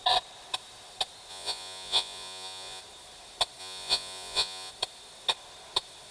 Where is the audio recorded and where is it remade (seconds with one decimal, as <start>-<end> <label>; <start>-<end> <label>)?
0.0-1.3 recorded; 1.3-2.8 remade; 2.8-3.6 recorded; 3.6-4.7 remade; 4.7-6.1 recorded